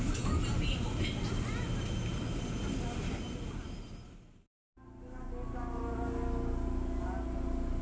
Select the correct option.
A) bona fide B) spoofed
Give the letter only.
A